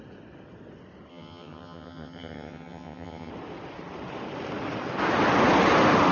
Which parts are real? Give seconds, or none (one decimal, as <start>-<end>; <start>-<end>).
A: 0.0-1.1; 3.3-6.1